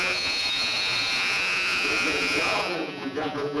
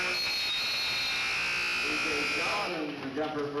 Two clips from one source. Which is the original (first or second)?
second